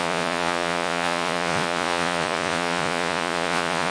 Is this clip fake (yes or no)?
yes